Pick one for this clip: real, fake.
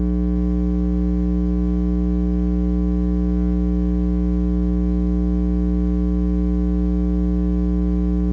real